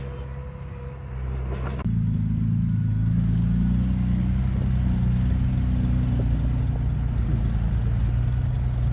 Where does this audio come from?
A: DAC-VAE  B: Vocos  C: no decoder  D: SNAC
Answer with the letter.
C